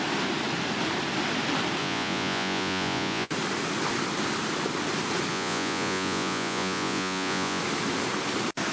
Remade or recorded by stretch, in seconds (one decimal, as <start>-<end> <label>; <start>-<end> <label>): 0.0-1.8 recorded; 1.8-3.3 remade; 3.3-5.3 recorded; 5.3-7.6 remade; 7.6-8.7 recorded